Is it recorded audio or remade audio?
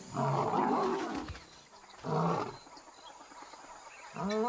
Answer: recorded